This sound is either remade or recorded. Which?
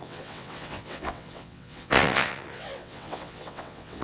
remade